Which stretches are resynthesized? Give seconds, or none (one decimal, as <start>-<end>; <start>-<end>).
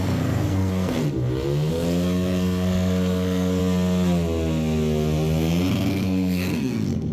0.0-1.0; 1.7-3.6; 5.9-7.1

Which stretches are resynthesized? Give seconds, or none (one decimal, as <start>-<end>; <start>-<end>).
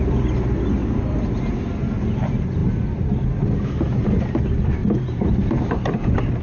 0.8-1.4; 4.8-6.0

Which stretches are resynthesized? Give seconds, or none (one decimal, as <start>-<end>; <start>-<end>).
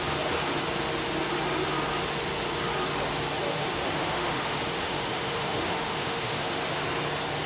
3.5-6.6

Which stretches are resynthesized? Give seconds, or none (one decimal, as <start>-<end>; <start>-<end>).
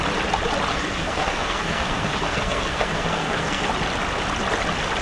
0.7-3.7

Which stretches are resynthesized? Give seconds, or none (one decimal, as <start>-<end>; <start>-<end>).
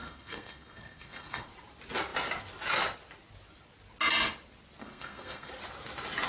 0.0-1.5; 4.8-5.5